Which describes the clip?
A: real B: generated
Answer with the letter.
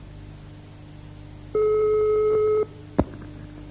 A